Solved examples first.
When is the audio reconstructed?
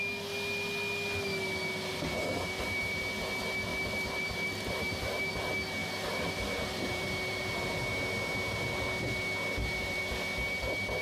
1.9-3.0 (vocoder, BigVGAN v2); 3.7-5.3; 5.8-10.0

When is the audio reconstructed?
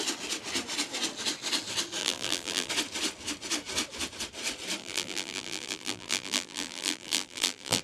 2.0-2.7 (vocoder, BigVGAN v2); 4.8-7.8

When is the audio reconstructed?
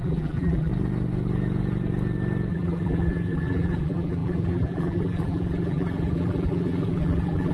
0.0-0.7 (vocoder, BigVGAN v2); 2.5-7.5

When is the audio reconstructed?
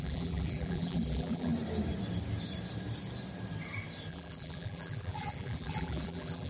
0.0-1.5 (vocoder, BigVGAN v2); 4.1-6.5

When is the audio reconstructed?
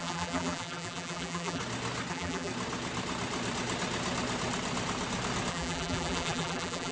0.0-1.6 (vocoder, BigVGAN v2); 2.1-2.5; 5.5-6.9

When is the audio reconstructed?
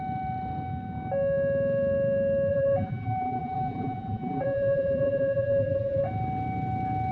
2.5-6.0 (vocoder, BigVGAN v2)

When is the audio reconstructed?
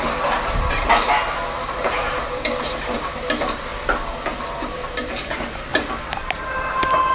0.0-3.7 (vocoder, BigVGAN v2); 4.6-7.1